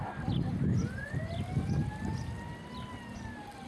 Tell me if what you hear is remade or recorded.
recorded